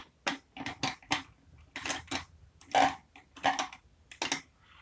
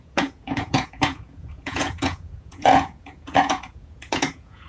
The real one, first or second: first